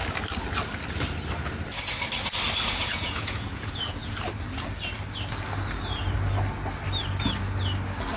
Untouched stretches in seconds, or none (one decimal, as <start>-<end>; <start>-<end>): 0.0-2.6; 4.0-8.2